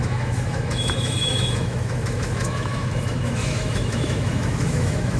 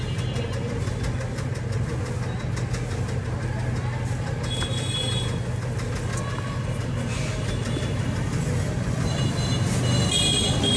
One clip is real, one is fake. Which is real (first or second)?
second